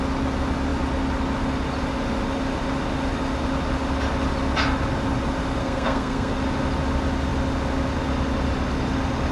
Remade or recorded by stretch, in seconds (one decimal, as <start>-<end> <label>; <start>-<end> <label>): 0.0-5.6 recorded; 5.6-6.3 remade; 6.3-9.3 recorded